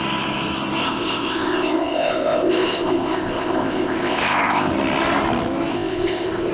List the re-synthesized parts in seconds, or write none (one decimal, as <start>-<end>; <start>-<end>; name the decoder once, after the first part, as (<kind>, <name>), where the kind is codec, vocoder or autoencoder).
0.8-4.7 (codec, ZipCodec); 5.7-6.5